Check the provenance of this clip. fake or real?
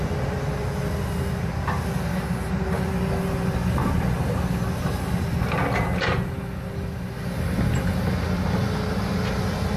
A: real